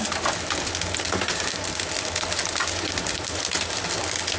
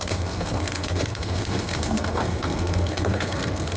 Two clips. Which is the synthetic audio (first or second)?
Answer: second